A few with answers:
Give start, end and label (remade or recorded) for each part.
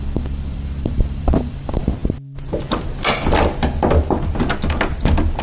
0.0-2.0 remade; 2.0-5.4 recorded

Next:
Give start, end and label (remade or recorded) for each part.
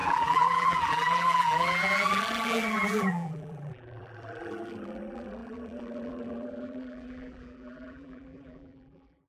0.0-9.3 remade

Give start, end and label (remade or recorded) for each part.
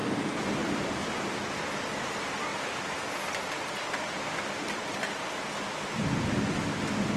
0.0-1.0 remade; 1.0-2.5 recorded; 2.5-3.5 remade; 3.5-7.2 recorded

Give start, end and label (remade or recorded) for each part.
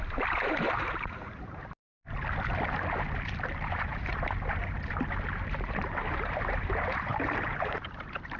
0.0-1.8 remade; 1.8-3.7 recorded; 3.7-8.4 remade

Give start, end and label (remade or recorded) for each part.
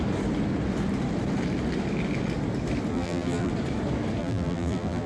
0.0-2.9 recorded; 2.9-3.5 remade; 3.5-4.2 recorded; 4.2-5.1 remade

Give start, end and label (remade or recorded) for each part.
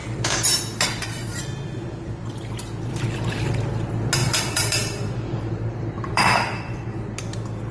0.0-0.6 remade; 0.6-1.2 recorded; 1.2-1.9 remade; 1.9-4.2 recorded; 4.2-7.2 remade; 7.2-7.7 recorded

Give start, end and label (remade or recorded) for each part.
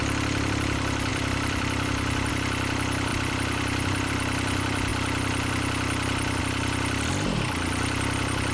0.0-1.1 recorded; 1.1-2.3 remade; 2.3-3.1 recorded; 3.1-4.1 remade; 4.1-8.5 recorded